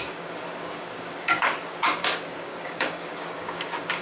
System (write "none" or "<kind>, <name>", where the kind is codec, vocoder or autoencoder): codec, DAC